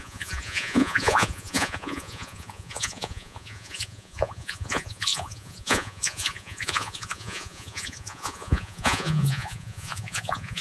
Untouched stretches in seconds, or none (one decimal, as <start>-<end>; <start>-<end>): none